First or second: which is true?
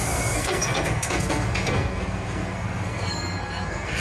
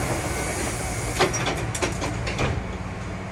second